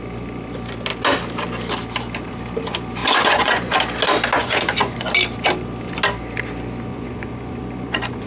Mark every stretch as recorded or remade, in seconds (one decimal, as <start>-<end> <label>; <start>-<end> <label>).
0.0-3.0 recorded; 3.0-3.7 remade; 3.7-4.4 recorded; 4.4-5.1 remade; 5.1-6.9 recorded; 6.9-8.3 remade